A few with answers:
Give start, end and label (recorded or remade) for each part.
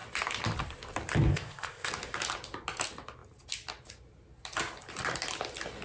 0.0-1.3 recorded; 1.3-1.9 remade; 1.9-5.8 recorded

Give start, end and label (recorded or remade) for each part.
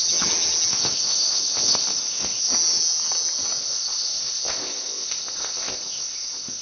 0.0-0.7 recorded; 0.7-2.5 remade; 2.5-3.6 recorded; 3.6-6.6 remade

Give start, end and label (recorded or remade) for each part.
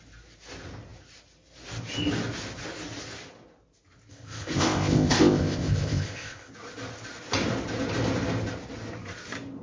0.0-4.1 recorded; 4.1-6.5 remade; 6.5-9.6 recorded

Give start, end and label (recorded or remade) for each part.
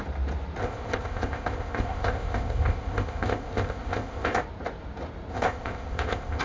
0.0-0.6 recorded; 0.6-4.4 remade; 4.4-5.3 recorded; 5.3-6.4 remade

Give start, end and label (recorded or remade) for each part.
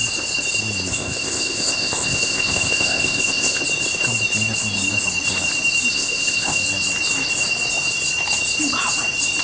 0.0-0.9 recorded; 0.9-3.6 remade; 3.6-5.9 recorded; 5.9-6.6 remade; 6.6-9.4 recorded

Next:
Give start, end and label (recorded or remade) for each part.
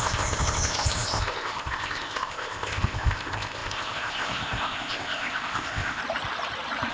0.0-6.0 remade; 6.0-6.9 recorded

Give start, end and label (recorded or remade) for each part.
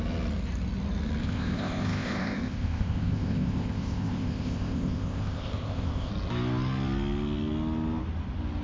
0.0-1.2 recorded; 1.2-6.1 remade; 6.1-8.6 recorded